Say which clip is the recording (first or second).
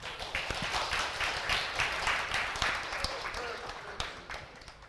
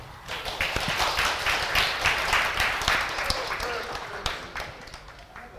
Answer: second